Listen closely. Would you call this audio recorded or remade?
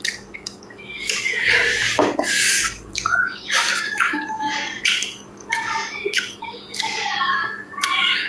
remade